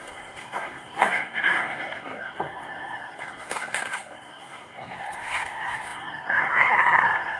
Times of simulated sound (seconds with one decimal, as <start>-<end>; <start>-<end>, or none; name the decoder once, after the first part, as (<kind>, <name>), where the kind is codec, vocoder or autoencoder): 0.0-7.4 (codec, SNAC)